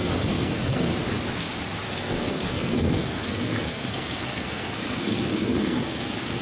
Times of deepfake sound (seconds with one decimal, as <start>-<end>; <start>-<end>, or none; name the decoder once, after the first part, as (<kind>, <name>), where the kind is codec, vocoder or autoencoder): 0.0-0.9 (codec, SNAC); 1.9-6.4